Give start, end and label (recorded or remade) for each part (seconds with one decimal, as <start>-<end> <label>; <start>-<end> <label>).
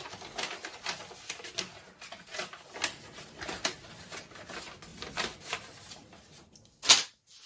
0.0-7.5 recorded